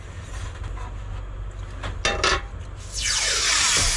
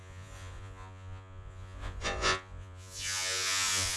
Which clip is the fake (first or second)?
second